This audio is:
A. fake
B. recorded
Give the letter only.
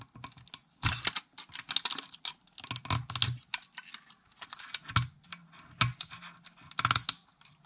B